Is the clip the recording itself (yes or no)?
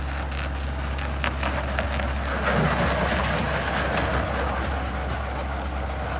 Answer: yes